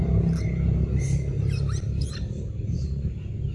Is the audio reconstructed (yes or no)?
no